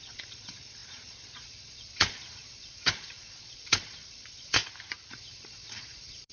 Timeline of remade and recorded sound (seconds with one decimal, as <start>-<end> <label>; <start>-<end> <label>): 0.0-4.6 remade; 4.6-5.1 recorded; 5.1-6.3 remade